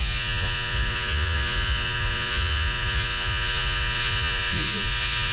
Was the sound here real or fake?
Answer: fake